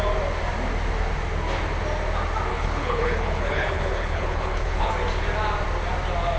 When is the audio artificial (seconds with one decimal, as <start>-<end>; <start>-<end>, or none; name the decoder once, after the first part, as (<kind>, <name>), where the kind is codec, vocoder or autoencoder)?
2.5-4.9 (codec, HILCodec)